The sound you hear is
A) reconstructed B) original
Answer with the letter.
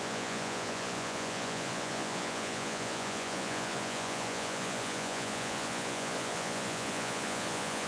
A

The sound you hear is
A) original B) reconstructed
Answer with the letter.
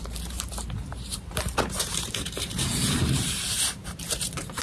B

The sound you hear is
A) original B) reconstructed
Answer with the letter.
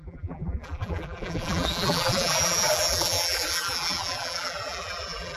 B